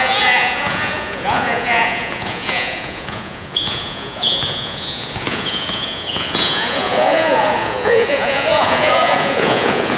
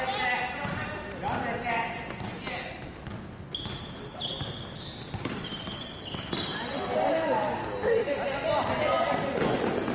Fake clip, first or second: first